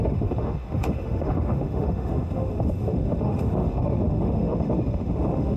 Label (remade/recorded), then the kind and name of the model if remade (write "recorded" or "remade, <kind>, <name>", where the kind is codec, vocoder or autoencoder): remade, autoencoder, DAC-VAE